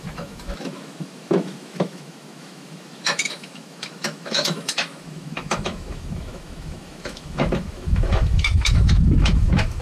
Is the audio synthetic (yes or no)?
yes